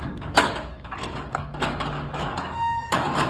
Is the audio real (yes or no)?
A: no